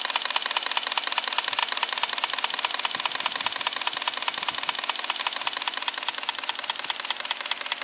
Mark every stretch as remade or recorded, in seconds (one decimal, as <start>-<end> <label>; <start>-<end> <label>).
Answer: 0.0-7.8 recorded